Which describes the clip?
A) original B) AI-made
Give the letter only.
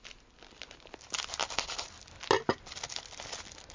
A